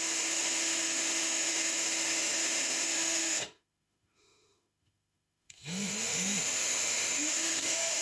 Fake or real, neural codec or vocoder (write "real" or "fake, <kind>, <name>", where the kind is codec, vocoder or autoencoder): fake, autoencoder, DAC-VAE